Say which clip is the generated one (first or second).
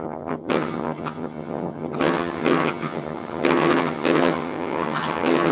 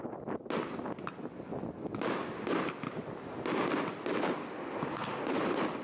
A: first